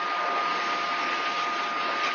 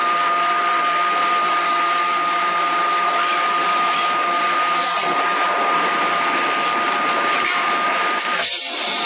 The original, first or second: first